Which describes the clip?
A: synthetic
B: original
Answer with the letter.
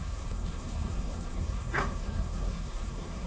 A